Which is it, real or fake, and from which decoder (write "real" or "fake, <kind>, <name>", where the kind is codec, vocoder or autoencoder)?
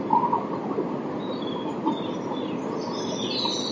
real